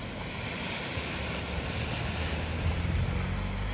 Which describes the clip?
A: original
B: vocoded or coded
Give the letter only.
A